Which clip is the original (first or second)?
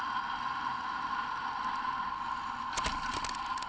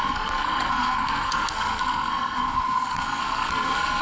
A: first